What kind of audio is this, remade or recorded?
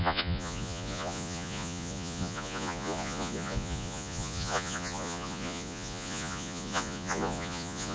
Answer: remade